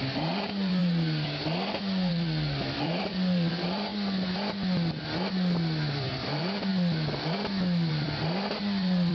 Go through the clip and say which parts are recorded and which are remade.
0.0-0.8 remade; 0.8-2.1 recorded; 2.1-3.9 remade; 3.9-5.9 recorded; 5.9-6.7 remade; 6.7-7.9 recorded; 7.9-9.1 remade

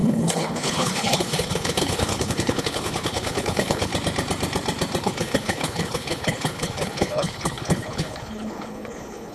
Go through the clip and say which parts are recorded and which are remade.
0.0-3.9 remade; 3.9-5.0 recorded; 5.0-9.3 remade

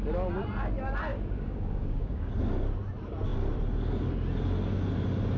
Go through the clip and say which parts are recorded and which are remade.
0.0-1.1 recorded; 1.1-2.3 remade; 2.3-5.4 recorded

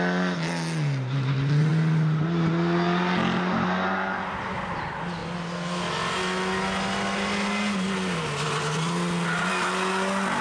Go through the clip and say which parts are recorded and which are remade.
0.0-10.4 recorded

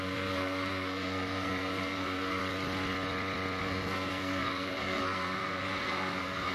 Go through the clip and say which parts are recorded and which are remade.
0.0-2.4 remade; 2.4-3.6 recorded; 3.6-6.5 remade